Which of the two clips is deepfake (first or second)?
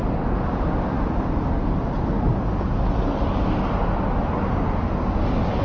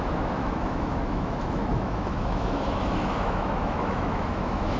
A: second